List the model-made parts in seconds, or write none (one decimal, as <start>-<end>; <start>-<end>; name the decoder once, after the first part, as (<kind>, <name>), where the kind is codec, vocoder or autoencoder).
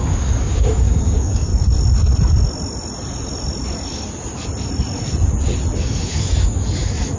0.0-1.5 (codec, DAC); 5.8-7.2